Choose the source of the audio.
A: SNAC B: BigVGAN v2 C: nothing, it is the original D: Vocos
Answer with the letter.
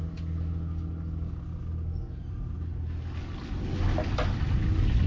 C